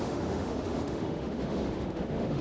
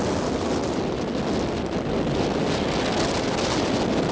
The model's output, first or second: first